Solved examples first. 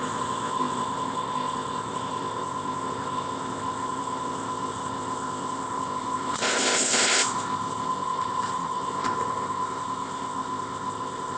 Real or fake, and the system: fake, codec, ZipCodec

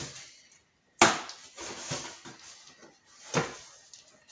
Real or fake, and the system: real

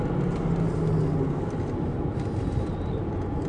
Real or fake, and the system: real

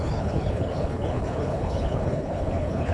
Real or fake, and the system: fake, codec, HILCodec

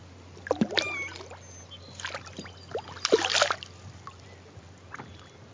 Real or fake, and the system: real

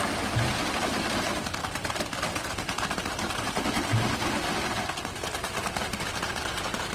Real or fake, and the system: real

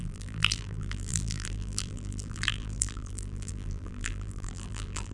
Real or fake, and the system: fake, vocoder, BigVGAN v2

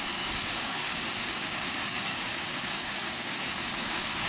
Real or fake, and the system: fake, codec, DAC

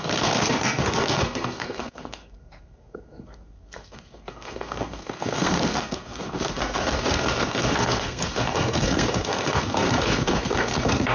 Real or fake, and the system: fake, codec, SNAC